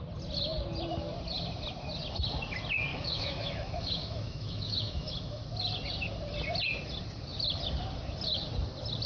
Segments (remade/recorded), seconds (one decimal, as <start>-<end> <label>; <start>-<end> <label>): 0.0-2.9 recorded; 2.9-5.4 remade; 5.4-9.1 recorded